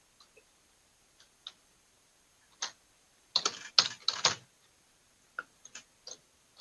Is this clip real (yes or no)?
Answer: yes